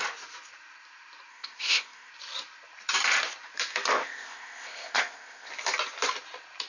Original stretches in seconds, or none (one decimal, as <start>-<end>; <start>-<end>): 0.0-1.3; 2.1-3.9; 5.5-6.7